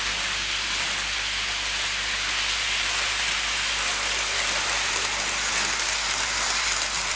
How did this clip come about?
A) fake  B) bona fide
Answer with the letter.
B